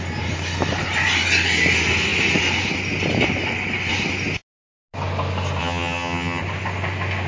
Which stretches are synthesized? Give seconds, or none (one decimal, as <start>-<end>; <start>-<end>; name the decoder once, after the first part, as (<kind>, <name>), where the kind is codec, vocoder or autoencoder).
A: 5.6-6.4 (vocoder, HiFi-GAN)

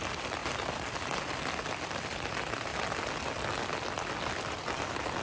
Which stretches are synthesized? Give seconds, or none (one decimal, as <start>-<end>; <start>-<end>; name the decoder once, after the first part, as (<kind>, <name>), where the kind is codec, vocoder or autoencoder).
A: 0.0-2.7 (vocoder, BigVGAN v2); 4.4-5.2

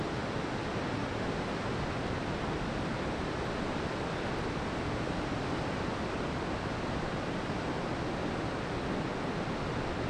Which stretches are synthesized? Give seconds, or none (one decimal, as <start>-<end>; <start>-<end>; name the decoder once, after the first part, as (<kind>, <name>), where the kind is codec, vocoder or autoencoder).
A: none

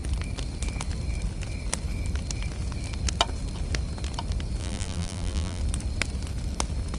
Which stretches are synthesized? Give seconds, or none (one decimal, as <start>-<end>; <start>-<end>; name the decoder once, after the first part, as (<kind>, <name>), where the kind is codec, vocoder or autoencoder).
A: 4.6-5.6 (vocoder, BigVGAN v2)

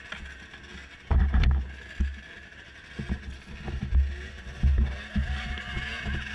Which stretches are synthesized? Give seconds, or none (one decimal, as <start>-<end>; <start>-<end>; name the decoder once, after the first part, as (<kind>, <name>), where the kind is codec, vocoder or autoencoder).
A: none